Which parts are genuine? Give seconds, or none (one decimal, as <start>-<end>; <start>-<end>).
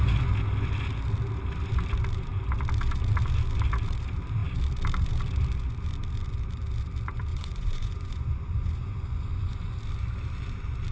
0.0-7.3; 9.8-10.9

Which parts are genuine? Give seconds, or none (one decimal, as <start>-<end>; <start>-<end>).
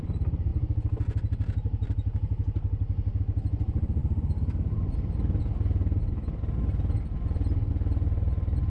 0.0-8.7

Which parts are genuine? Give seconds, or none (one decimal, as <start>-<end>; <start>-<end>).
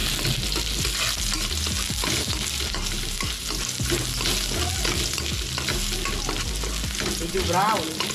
0.0-8.1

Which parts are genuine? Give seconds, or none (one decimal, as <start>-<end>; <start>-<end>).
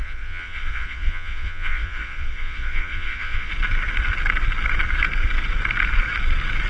3.5-6.7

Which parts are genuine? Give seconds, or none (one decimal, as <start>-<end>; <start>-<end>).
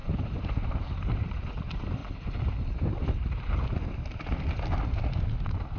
2.0-5.8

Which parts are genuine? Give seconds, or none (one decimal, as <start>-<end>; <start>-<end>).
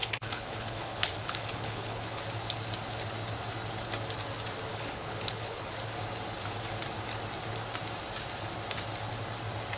2.2-4.7; 5.6-9.8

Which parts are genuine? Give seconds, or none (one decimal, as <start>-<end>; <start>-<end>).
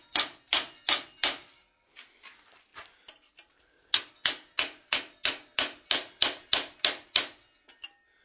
0.0-8.2